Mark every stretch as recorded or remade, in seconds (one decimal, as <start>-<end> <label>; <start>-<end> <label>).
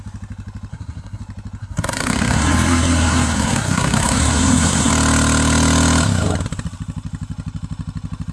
0.0-0.7 recorded; 0.7-1.2 remade; 1.2-1.6 recorded; 1.6-4.9 remade; 4.9-8.3 recorded